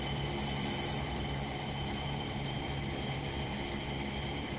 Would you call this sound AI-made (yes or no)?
yes